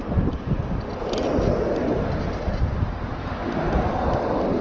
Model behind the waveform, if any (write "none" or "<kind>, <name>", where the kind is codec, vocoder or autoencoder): none